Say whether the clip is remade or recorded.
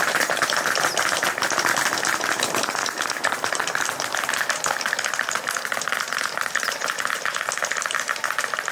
recorded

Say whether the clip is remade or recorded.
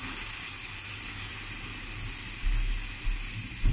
recorded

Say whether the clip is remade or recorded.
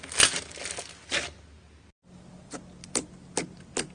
recorded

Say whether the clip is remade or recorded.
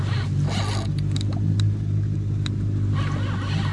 recorded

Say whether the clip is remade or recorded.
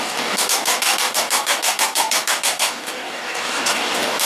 remade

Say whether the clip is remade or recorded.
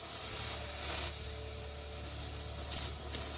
recorded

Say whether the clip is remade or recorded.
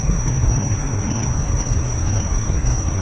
remade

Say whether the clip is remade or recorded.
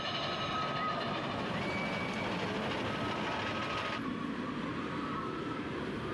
recorded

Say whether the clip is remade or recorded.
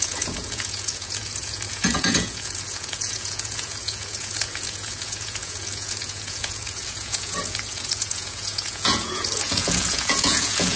remade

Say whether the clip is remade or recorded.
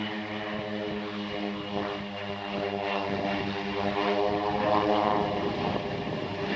remade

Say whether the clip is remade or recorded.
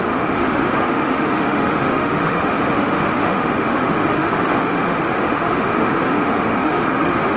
remade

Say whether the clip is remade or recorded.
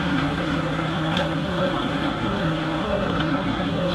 remade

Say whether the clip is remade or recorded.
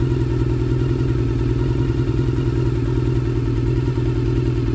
recorded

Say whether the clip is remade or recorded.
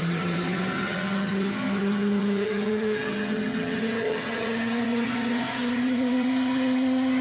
remade